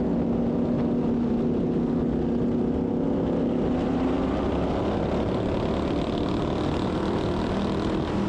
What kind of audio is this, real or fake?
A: real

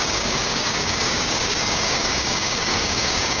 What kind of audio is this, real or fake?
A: fake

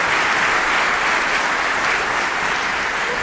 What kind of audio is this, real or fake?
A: real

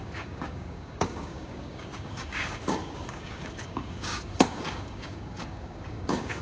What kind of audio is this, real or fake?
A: fake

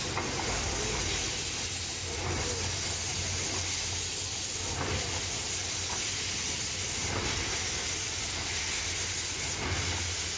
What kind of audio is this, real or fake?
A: real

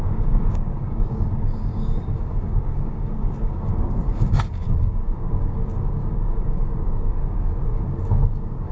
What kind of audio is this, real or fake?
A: fake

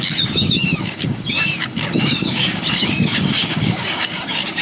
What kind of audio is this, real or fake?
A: fake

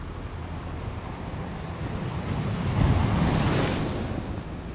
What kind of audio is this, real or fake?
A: real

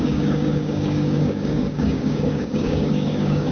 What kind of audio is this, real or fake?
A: fake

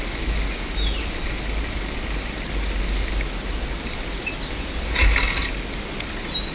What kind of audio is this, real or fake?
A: real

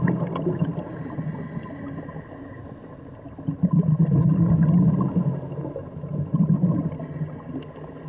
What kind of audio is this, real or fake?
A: real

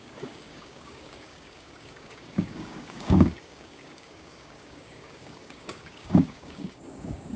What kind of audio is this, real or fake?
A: fake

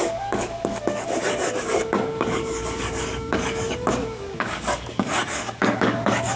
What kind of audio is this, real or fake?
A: fake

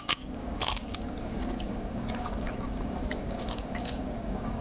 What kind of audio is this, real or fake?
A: fake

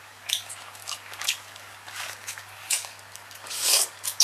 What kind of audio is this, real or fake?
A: fake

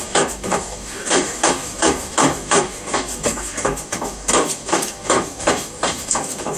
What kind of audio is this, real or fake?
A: fake